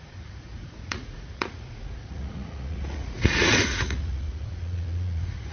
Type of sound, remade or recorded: remade